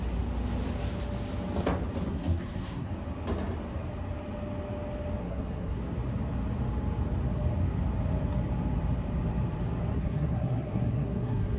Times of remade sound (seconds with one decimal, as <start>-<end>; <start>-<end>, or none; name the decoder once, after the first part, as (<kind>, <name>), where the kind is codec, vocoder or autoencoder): 2.1-2.9 (codec, SNAC); 5.2-5.8; 9.9-11.6